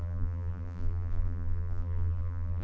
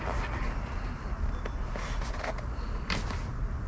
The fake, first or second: first